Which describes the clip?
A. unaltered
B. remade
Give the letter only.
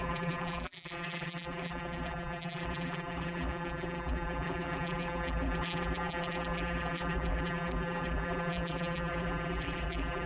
B